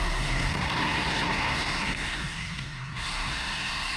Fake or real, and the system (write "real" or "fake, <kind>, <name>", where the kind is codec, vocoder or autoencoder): fake, codec, SNAC